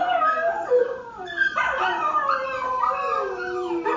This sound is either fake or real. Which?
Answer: real